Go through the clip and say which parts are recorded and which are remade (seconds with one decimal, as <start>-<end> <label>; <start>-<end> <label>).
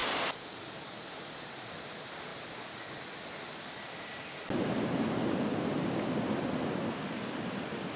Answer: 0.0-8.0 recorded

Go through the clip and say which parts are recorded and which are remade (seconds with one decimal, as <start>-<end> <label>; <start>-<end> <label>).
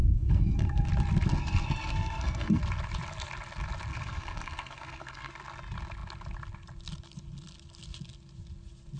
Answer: 0.0-0.9 remade; 0.9-1.3 recorded; 1.3-2.6 remade; 2.6-3.9 recorded; 3.9-5.3 remade; 5.3-9.0 recorded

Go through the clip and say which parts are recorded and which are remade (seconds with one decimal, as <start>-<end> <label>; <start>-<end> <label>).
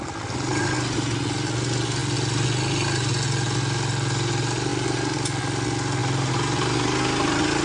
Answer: 0.0-7.6 recorded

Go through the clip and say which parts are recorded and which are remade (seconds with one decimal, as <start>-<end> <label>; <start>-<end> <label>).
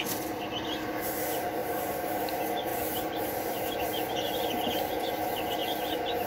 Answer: 0.0-1.6 recorded; 1.6-2.2 remade; 2.2-2.7 recorded; 2.7-3.8 remade; 3.8-5.6 recorded; 5.6-6.3 remade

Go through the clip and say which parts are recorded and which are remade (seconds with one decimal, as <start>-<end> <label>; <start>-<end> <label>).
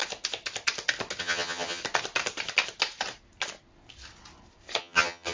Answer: 0.0-1.2 recorded; 1.2-1.8 remade; 1.8-4.8 recorded; 4.8-5.3 remade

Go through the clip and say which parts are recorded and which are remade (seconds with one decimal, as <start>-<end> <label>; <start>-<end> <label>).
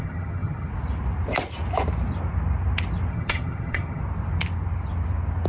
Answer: 0.0-0.7 remade; 0.7-3.1 recorded; 3.1-4.0 remade; 4.0-5.5 recorded